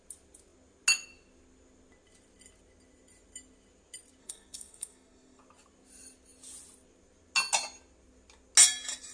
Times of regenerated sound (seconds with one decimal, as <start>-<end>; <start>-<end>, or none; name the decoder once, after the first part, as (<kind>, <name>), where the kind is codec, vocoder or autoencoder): 4.2-5.4 (codec, SNAC)

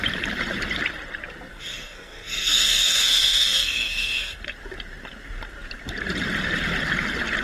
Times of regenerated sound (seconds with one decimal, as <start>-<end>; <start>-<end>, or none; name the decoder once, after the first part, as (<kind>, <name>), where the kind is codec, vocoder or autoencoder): 1.5-4.4 (codec, SNAC)

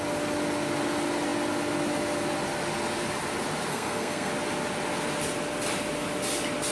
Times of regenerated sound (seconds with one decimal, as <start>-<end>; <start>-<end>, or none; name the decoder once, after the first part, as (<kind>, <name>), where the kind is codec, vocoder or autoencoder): 3.7-4.3 (codec, SNAC)

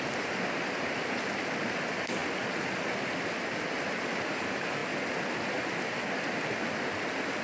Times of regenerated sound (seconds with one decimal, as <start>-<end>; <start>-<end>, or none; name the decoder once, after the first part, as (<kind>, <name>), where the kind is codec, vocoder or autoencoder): none

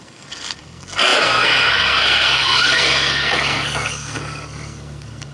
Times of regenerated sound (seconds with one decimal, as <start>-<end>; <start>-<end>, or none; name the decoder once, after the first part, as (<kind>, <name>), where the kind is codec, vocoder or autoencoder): 0.0-5.3 (codec, SNAC)